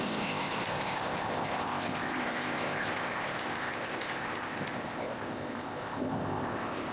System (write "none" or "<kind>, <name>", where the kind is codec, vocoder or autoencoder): codec, ZipCodec